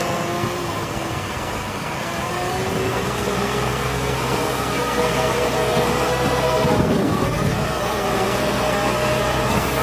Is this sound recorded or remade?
remade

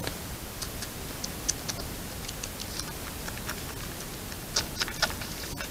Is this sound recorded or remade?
recorded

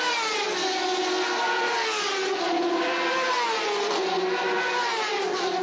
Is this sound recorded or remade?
recorded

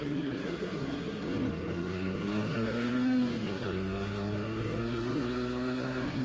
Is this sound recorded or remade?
remade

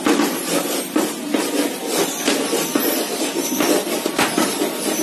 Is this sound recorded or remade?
recorded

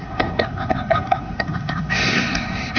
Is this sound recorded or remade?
remade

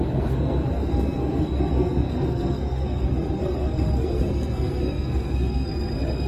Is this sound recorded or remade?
remade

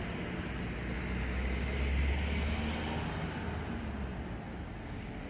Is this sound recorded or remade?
recorded